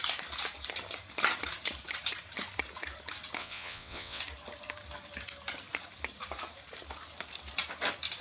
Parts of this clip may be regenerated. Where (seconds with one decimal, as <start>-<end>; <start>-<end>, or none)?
3.4-4.2